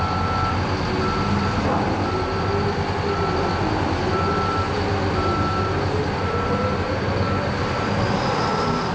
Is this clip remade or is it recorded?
recorded